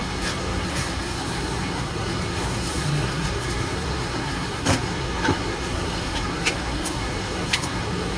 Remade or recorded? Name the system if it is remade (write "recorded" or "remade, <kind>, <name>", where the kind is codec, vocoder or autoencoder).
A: remade, codec, SNAC